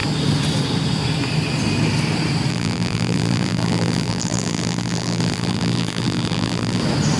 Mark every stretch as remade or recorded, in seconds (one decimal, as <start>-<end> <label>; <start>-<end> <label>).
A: 0.0-2.5 recorded; 2.5-6.8 remade; 6.8-7.2 recorded